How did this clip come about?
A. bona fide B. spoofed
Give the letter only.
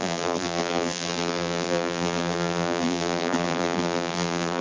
B